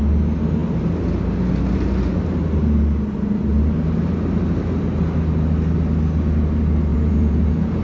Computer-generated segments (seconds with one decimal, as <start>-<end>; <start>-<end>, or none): 6.9-7.8